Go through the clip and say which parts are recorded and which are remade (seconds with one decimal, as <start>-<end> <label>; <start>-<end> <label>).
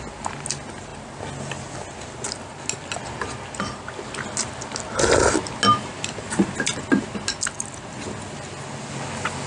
0.0-9.5 recorded